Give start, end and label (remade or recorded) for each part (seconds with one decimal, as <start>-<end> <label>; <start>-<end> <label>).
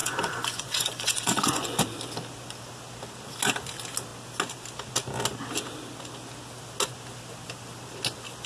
0.0-1.8 remade; 1.8-8.5 recorded